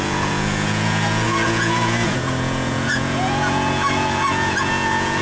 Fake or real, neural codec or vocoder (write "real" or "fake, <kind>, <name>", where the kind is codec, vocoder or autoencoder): fake, vocoder, Vocos